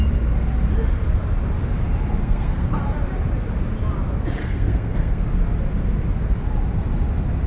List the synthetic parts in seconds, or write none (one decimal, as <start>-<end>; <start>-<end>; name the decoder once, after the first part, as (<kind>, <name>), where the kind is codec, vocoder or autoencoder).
2.2-2.8 (codec, SNAC); 4.4-5.2